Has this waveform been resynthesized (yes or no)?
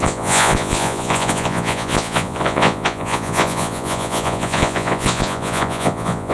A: yes